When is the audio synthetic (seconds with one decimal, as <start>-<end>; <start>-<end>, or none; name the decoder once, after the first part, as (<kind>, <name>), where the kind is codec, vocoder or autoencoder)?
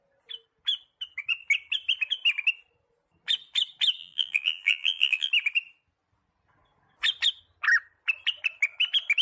4.0-5.3 (vocoder, BigVGAN v2)